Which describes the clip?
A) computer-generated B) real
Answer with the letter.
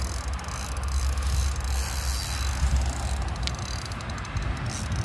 B